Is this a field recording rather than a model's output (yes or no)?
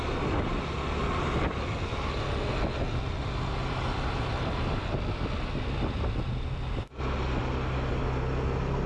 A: yes